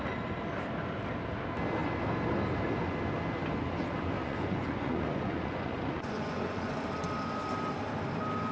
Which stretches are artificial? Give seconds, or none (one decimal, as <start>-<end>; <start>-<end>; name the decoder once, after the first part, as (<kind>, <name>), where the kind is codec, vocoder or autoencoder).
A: 4.2-6.8 (vocoder, Vocos)